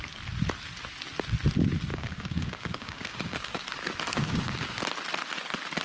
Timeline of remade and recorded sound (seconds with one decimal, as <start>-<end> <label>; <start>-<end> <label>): 0.0-1.9 recorded; 1.9-3.6 remade; 3.6-4.1 recorded; 4.1-4.8 remade; 4.8-5.8 recorded